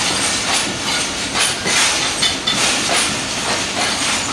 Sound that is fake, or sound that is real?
real